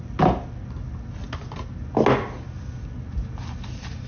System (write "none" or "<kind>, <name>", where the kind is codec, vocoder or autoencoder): none